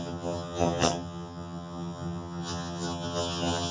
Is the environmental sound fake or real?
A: fake